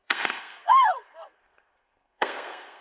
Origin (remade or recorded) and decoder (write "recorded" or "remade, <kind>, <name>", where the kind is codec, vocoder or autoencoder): remade, codec, SNAC